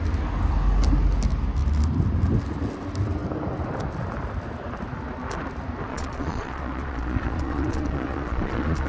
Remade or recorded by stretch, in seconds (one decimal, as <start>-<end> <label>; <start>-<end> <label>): 0.0-5.9 recorded; 5.9-8.9 remade